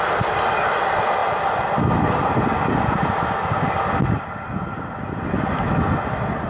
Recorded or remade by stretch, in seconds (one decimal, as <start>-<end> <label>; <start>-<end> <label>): 0.0-6.5 recorded